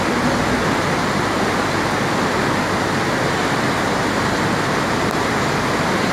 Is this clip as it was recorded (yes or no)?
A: yes